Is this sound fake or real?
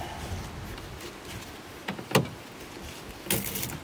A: real